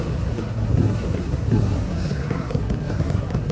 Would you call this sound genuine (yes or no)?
no